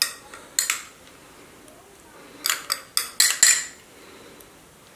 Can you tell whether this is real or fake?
real